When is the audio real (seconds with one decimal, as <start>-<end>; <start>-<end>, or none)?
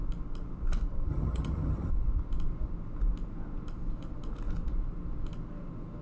0.0-1.1; 1.9-6.0